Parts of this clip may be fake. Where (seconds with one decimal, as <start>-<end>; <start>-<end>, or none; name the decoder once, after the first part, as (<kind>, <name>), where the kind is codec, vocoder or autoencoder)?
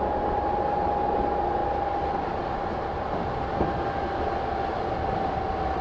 none